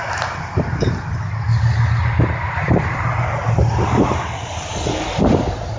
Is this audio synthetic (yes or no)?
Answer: no